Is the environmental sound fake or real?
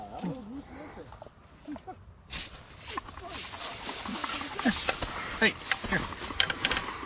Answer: real